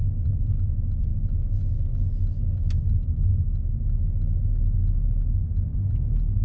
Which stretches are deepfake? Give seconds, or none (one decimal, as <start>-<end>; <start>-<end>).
none